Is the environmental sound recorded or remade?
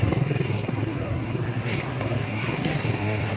remade